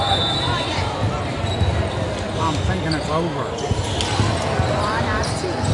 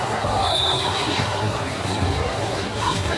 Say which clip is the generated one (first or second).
second